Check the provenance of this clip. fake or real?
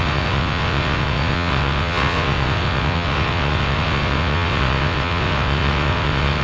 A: fake